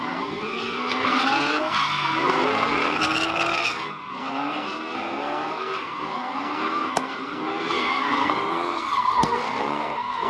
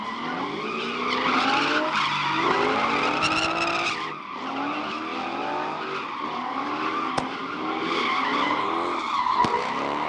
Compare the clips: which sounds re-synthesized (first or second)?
first